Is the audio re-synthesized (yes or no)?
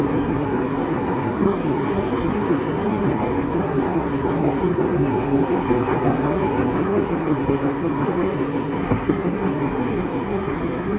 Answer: yes